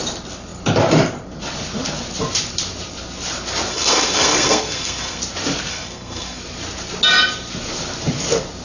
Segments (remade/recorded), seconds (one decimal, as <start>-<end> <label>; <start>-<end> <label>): 0.0-3.7 recorded; 3.7-5.2 remade; 5.2-5.7 recorded; 5.7-6.4 remade; 6.4-8.6 recorded

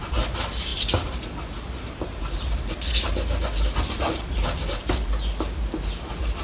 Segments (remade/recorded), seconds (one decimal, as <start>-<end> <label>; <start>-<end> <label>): 0.0-6.4 recorded

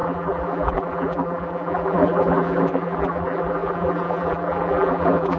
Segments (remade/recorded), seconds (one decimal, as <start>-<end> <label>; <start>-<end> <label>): 0.0-5.4 remade

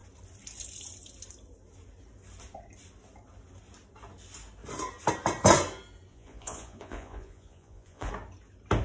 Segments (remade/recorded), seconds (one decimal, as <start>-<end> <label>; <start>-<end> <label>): 0.0-6.1 recorded; 6.1-8.1 remade; 8.1-8.8 recorded